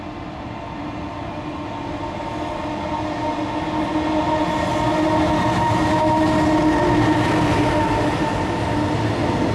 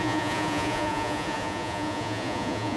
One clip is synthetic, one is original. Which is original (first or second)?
first